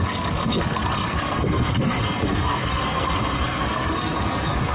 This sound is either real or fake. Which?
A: fake